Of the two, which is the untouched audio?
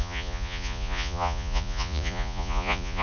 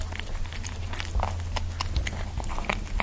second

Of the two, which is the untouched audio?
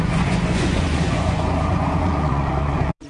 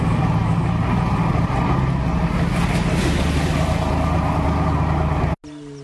second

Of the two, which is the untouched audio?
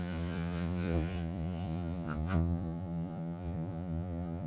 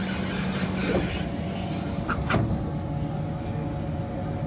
second